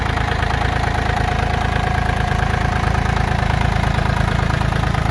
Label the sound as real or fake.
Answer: fake